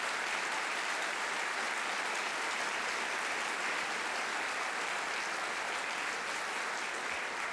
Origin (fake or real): real